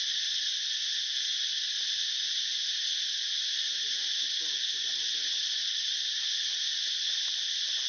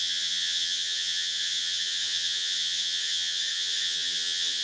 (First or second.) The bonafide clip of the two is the first